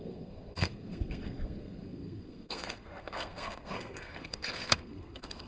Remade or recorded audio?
remade